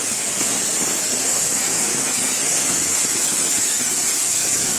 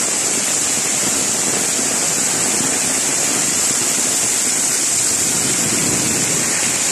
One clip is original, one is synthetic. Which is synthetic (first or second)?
first